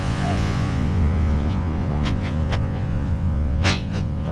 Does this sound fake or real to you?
fake